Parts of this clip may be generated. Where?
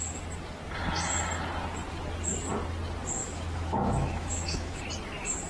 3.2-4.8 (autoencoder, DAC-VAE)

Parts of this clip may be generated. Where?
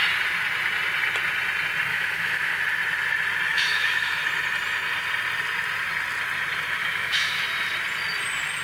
1.9-2.6 (autoencoder, DAC-VAE); 3.5-4.2; 6.8-7.4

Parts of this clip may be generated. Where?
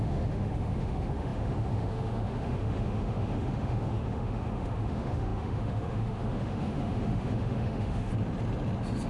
0.0-8.1 (autoencoder, DAC-VAE)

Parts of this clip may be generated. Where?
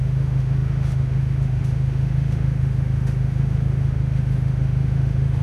0.0-5.4 (autoencoder, DAC-VAE)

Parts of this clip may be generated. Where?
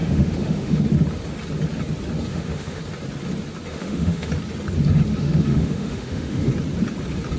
0.0-0.8 (autoencoder, DAC-VAE); 2.3-2.8; 3.7-4.3; 5.1-6.5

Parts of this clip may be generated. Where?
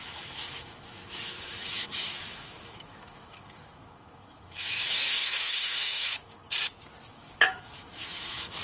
0.0-6.4 (autoencoder, DAC-VAE); 7.1-8.6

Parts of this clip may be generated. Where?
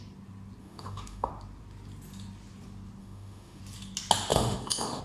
0.6-1.3 (autoencoder, DAC-VAE); 3.0-3.6; 4.3-5.0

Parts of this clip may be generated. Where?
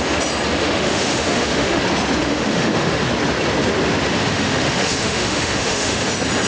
0.6-1.8 (autoencoder, DAC-VAE); 2.2-3.0; 4.2-6.1